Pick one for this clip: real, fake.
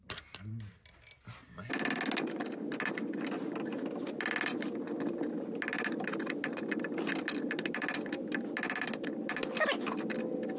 real